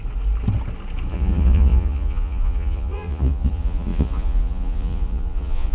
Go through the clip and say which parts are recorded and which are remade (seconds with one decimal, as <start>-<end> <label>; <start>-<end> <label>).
0.0-1.1 recorded; 1.1-5.7 remade